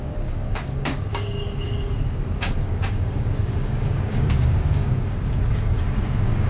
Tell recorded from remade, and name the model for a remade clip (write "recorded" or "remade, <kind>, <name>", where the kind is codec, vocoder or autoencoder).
remade, codec, DAC